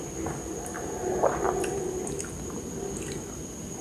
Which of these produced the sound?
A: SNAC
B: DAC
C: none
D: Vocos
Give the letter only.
C